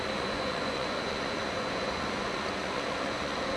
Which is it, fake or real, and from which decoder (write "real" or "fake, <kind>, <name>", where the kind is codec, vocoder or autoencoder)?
fake, vocoder, Vocos